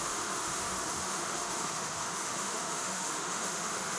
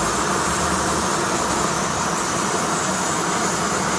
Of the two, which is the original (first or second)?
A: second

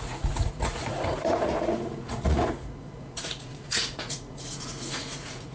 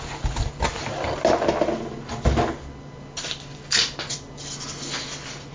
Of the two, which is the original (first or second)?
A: second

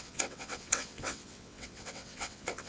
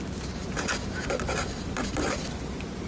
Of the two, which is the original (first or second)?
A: second